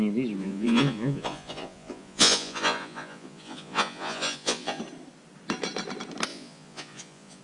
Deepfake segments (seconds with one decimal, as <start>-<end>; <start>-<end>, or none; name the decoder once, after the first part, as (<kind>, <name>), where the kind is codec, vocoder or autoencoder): 0.4-4.8 (vocoder, Vocos); 6.3-7.4